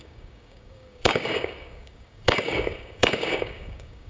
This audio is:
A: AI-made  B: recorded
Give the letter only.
A